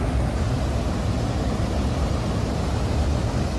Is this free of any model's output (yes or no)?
yes